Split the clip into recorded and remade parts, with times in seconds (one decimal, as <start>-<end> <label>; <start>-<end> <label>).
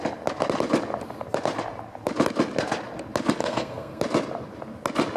0.0-3.4 recorded; 3.4-4.0 remade; 4.0-5.2 recorded